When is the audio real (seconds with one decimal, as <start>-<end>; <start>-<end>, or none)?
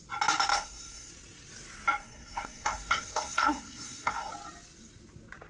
0.0-0.5; 1.1-2.0; 4.3-5.5